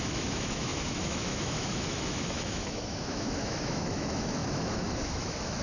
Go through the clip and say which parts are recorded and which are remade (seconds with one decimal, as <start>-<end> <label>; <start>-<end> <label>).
0.0-5.6 remade